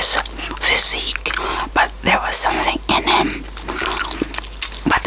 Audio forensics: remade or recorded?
recorded